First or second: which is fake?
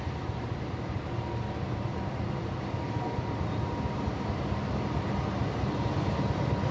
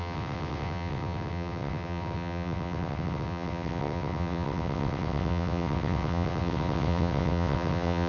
second